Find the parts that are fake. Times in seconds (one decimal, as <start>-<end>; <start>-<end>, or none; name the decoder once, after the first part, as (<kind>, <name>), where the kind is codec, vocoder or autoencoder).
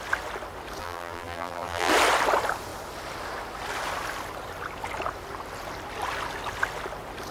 0.8-1.9 (vocoder, BigVGAN v2)